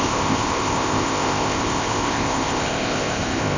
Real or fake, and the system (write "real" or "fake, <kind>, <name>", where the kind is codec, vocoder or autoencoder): fake, codec, ZipCodec